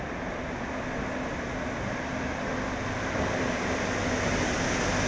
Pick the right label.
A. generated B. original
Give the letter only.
B